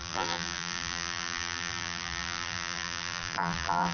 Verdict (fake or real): fake